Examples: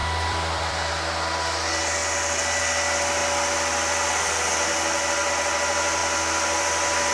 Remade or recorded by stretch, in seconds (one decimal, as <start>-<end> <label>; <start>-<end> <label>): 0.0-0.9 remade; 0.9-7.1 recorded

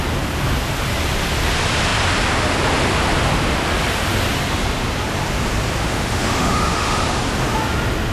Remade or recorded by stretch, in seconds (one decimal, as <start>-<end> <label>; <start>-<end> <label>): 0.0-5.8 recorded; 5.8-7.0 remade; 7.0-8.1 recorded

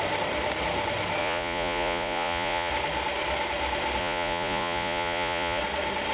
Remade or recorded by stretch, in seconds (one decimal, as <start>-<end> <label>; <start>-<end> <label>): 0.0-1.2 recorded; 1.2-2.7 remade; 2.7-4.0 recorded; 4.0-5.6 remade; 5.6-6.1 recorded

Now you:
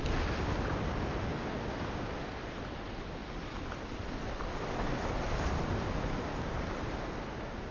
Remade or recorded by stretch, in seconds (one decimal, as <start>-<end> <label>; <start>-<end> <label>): 0.0-7.7 recorded

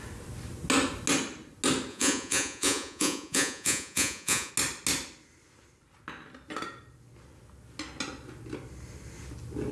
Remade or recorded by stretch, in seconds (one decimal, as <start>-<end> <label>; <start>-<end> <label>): 0.0-1.9 recorded; 1.9-4.5 remade; 4.5-9.7 recorded

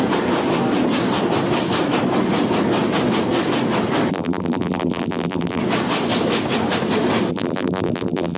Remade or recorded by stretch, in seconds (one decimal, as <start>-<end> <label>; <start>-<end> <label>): 0.0-4.1 recorded; 4.1-5.6 remade; 5.6-7.3 recorded; 7.3-8.4 remade